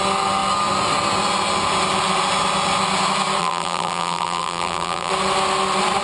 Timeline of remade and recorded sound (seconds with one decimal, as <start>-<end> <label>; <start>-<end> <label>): 0.0-3.4 recorded; 3.4-5.1 remade; 5.1-6.0 recorded